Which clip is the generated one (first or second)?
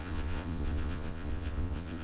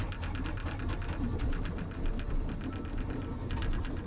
first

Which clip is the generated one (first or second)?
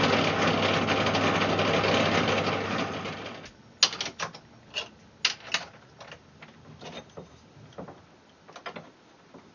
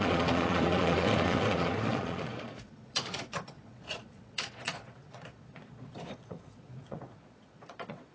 second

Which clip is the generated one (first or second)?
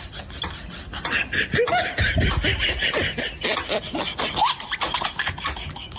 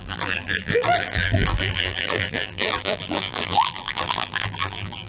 second